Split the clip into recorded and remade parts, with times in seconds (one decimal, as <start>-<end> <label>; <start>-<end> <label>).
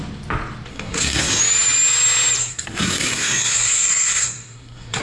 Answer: 0.0-0.7 recorded; 0.7-1.4 remade; 1.4-2.4 recorded; 2.4-5.0 remade